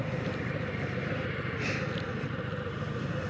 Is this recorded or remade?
recorded